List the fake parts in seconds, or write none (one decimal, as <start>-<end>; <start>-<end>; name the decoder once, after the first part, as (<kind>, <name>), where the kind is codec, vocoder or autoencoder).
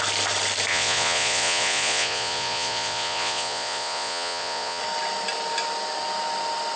0.7-4.8 (vocoder, Vocos)